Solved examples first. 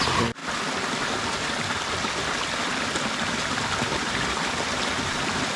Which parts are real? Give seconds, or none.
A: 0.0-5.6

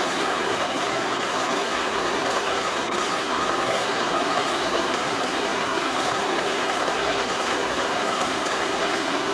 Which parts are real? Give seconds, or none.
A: none

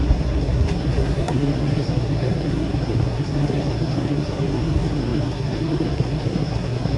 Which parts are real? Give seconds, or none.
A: none

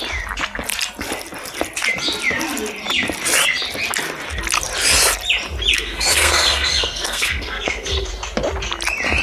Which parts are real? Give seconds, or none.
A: 0.0-5.7; 8.1-9.2

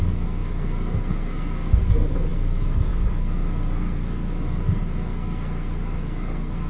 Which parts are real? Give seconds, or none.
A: none

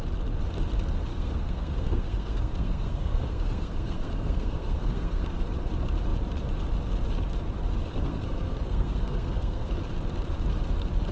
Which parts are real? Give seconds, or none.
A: 0.0-1.1; 5.4-7.9; 9.7-11.1

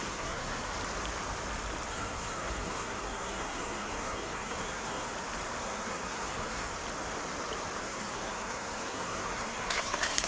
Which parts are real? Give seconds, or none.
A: 0.7-1.9; 5.1-5.6; 6.7-7.8